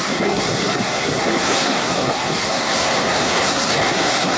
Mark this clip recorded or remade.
remade